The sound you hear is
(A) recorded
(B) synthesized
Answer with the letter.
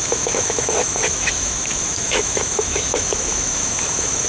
B